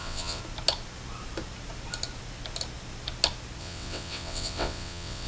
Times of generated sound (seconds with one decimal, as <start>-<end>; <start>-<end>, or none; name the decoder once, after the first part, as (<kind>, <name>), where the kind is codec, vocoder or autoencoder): 0.0-0.4 (vocoder, WaveNeXt); 3.6-5.3